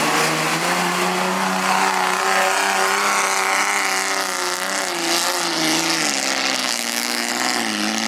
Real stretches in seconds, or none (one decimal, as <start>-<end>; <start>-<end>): 0.0-6.6; 7.3-8.1